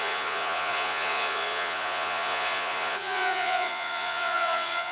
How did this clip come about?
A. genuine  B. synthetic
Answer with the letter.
B